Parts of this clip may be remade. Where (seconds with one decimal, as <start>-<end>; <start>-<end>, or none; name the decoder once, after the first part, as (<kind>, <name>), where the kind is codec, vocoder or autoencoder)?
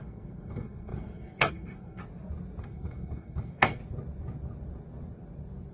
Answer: 0.0-2.0 (codec, SNAC); 2.6-3.8